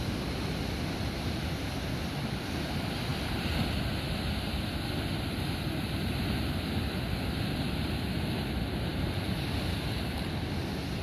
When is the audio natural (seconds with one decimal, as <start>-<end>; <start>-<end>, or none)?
0.0-8.9; 10.6-11.0